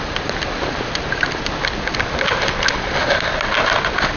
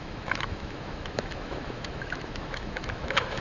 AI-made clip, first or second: second